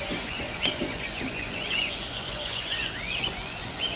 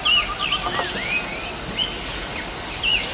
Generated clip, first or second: first